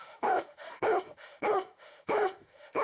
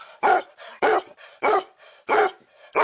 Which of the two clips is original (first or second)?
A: second